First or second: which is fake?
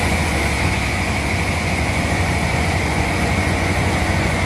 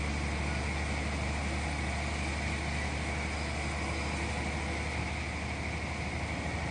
first